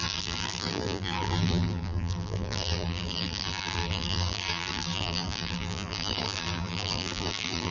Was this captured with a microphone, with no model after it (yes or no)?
no